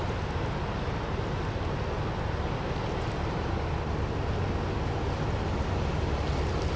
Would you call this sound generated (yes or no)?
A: no